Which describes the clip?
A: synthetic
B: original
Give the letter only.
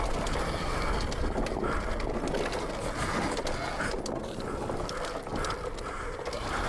B